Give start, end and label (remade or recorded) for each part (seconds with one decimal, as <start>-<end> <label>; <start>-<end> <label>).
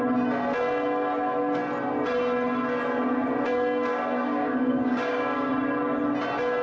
0.0-3.9 recorded; 3.9-5.5 remade; 5.5-6.6 recorded